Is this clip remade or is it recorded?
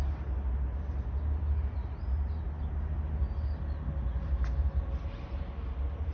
recorded